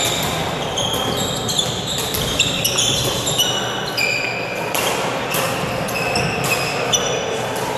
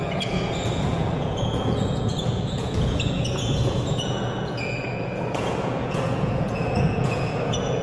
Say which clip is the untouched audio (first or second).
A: first